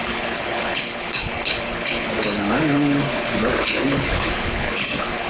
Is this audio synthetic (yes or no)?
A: yes